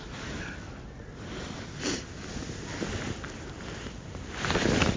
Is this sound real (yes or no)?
yes